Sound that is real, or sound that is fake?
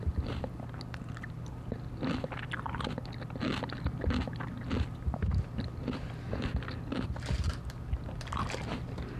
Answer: real